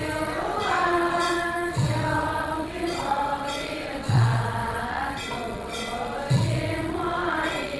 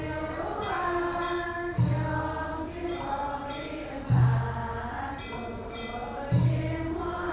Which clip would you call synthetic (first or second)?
first